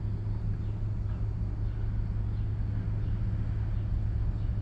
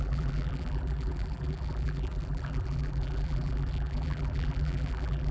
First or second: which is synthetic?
second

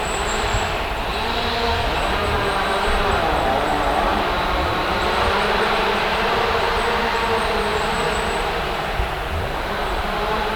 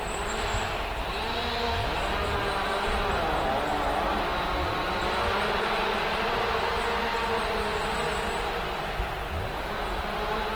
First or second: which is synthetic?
first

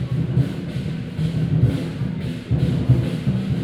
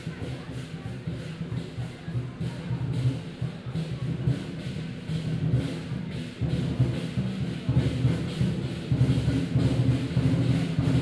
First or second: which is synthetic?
first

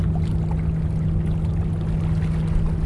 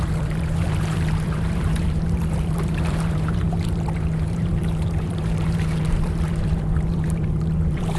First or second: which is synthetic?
second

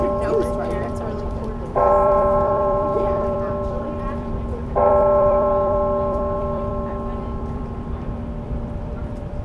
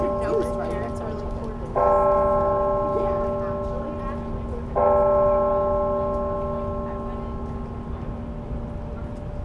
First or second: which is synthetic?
first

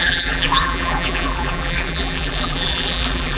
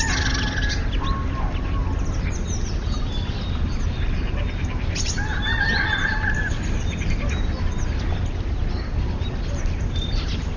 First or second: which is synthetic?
first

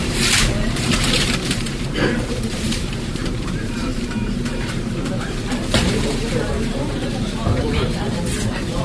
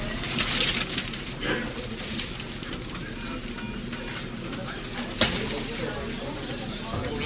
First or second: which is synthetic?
first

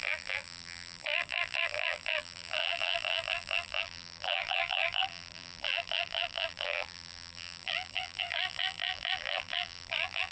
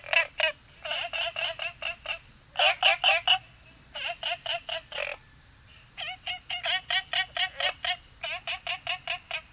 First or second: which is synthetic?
first